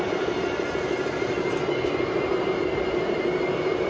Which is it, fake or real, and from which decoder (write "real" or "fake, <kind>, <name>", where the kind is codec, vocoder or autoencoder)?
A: real